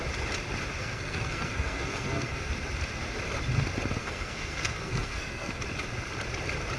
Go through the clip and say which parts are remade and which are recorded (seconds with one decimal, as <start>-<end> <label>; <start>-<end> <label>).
0.0-0.8 recorded; 0.8-2.5 remade; 2.5-4.0 recorded; 4.0-5.6 remade; 5.6-6.8 recorded